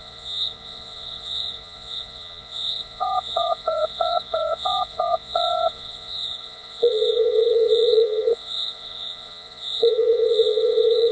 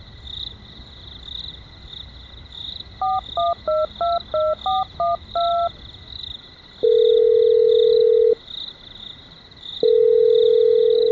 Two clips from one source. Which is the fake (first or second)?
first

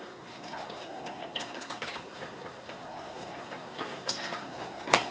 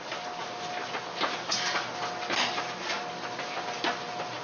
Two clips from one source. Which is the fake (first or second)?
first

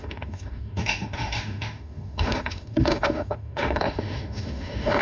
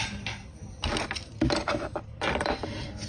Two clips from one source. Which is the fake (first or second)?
first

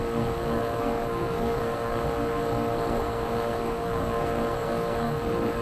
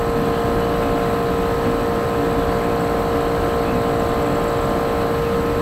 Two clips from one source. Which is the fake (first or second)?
first